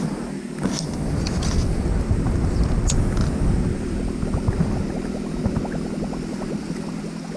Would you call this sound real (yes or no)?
yes